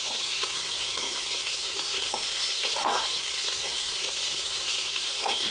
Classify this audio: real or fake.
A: fake